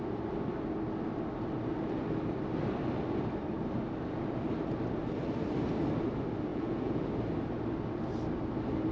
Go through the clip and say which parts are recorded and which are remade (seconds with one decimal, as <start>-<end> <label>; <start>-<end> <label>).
0.0-6.5 recorded; 6.5-7.1 remade; 7.1-8.9 recorded